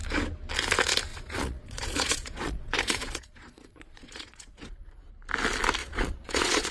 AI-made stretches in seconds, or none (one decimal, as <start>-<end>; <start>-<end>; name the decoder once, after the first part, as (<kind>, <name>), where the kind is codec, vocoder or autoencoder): 1.1-5.1 (vocoder, Vocos); 5.8-6.7